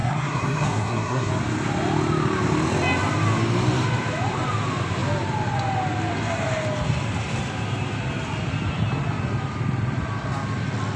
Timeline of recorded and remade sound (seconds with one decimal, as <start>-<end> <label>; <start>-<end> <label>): 0.0-1.3 remade; 1.3-11.0 recorded